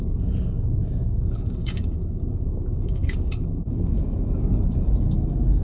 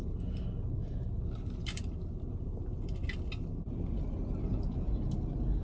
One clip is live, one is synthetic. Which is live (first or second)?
second